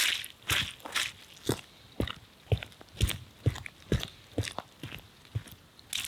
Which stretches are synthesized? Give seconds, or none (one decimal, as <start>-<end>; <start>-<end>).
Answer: none